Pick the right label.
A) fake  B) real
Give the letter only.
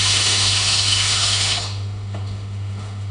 A